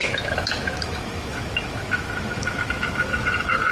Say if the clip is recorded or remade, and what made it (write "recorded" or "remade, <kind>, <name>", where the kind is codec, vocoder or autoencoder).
remade, autoencoder, DAC-VAE